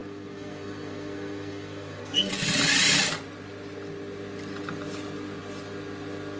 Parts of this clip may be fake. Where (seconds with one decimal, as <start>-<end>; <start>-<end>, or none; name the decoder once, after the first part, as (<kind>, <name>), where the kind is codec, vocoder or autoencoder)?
0.0-2.3 (codec, SNAC)